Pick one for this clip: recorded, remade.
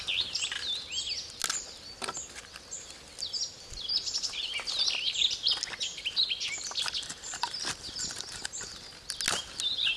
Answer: recorded